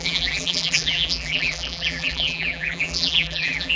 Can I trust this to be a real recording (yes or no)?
no